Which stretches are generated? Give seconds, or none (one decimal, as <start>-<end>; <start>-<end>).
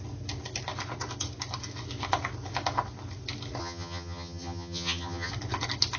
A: 3.6-5.3